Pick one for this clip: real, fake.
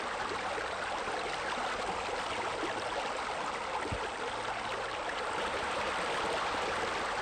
real